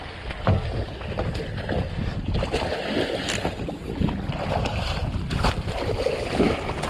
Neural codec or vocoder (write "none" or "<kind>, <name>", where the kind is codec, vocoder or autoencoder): none